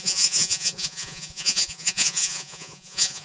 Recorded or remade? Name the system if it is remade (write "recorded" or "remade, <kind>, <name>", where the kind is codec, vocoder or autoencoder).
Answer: remade, vocoder, Vocos